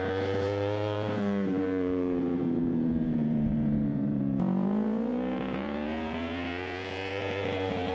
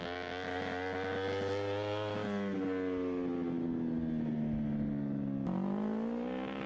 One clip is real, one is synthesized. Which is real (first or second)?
second